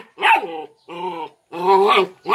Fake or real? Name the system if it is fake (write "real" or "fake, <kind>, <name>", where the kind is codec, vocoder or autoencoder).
real